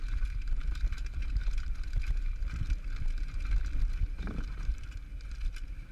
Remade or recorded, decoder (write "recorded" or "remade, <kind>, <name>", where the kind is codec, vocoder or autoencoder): recorded